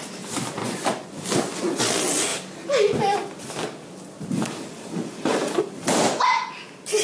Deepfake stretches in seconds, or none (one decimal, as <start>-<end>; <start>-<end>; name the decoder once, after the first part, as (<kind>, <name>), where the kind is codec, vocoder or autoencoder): 0.6-1.8 (vocoder, Vocos)